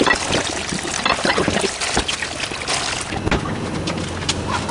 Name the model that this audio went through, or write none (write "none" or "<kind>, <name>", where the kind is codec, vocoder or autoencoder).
none